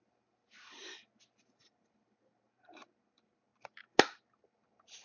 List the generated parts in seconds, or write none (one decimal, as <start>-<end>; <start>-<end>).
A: 0.0-0.8; 1.4-3.5; 4.3-5.0